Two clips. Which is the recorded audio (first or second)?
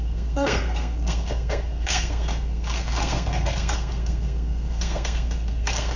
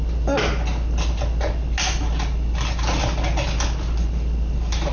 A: second